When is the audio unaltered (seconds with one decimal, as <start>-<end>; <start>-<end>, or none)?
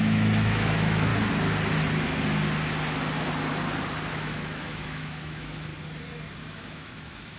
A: 1.1-4.1; 5.7-6.5